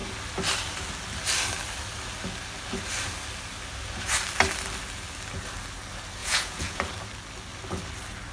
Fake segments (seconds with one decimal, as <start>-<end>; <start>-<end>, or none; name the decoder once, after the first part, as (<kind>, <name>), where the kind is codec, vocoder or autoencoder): 6.2-6.8 (vocoder, Vocos)